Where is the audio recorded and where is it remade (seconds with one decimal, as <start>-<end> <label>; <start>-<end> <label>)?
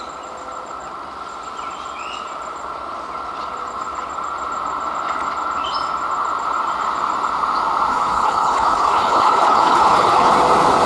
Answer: 0.0-7.9 recorded; 7.9-10.3 remade; 10.3-10.9 recorded